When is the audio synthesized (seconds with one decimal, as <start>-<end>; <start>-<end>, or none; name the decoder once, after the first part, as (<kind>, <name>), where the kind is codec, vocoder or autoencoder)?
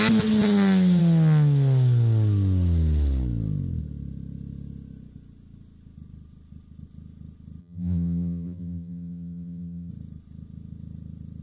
7.6-9.9 (vocoder, BigVGAN v2)